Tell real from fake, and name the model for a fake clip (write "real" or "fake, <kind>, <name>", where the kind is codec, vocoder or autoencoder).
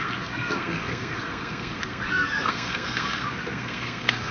fake, codec, SNAC